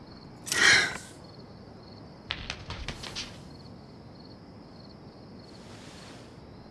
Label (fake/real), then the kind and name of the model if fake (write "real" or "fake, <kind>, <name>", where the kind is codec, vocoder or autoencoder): real